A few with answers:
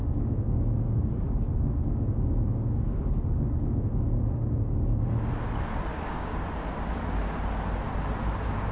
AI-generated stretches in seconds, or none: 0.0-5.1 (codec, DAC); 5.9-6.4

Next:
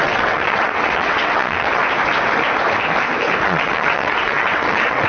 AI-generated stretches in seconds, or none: 0.0-1.8 (vocoder, WaveNeXt); 3.4-5.1